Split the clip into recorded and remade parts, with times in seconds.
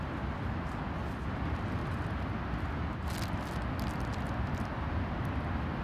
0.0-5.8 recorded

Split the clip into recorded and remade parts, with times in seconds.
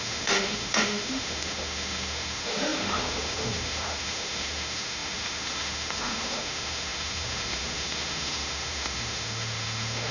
0.0-10.1 remade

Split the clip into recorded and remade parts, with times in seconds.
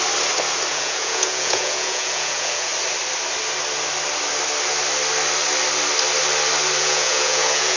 0.0-0.7 recorded; 0.7-2.7 remade; 2.7-6.8 recorded; 6.8-7.8 remade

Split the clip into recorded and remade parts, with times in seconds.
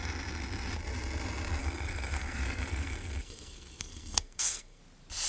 0.0-1.6 recorded; 1.6-4.8 remade; 4.8-5.3 recorded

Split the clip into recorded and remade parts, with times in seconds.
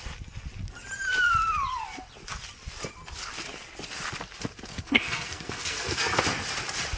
0.0-4.7 recorded; 4.7-6.2 remade; 6.2-7.0 recorded